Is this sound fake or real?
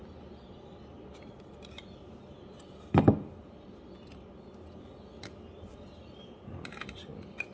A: real